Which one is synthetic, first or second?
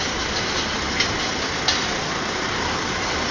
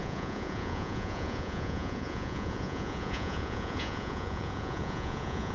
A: second